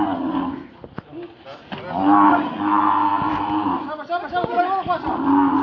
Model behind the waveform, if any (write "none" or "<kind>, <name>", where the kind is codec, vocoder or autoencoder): none